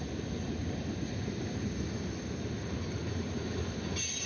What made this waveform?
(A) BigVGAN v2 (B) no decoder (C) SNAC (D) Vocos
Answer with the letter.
B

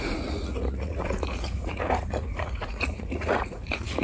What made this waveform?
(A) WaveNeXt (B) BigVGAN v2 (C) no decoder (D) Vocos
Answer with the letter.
D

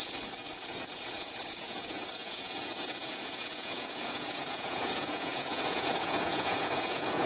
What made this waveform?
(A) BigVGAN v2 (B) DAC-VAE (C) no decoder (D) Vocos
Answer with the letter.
D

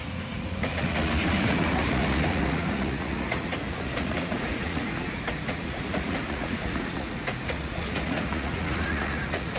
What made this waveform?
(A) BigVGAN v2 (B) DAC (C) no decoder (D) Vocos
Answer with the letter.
D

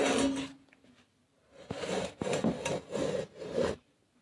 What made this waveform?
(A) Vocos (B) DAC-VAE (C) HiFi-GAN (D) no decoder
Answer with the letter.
D